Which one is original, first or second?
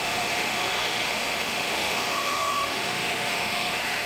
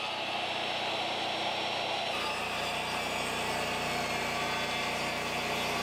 second